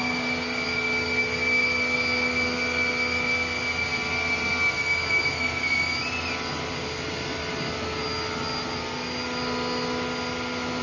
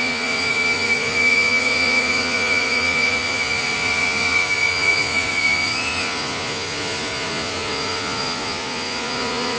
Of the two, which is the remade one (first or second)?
second